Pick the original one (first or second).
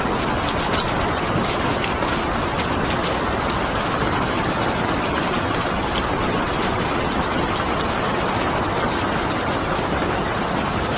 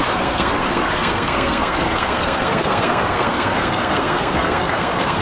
first